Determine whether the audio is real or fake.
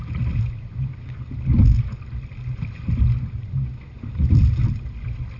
real